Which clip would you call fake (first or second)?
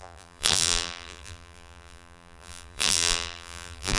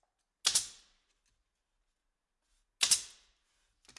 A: first